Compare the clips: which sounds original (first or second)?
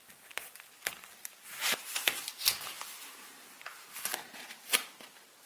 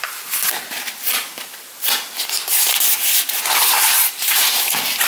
first